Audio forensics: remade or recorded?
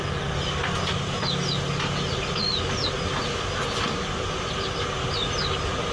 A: recorded